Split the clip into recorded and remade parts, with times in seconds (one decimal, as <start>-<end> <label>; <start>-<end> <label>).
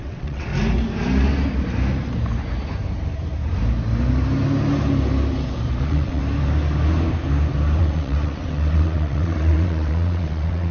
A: 0.0-0.5 remade; 0.5-5.8 recorded; 5.8-6.2 remade; 6.2-7.8 recorded; 7.8-10.7 remade